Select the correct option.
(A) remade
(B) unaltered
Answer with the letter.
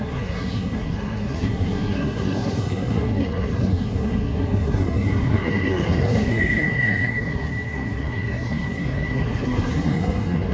A